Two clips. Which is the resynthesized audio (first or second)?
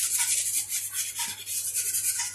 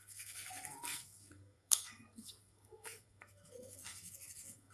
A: second